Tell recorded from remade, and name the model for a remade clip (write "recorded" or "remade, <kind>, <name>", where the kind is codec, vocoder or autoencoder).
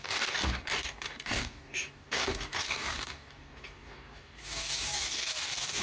remade, codec, DAC